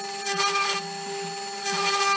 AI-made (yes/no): no